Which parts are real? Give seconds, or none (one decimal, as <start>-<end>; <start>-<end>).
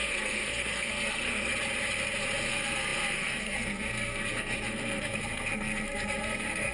1.5-2.5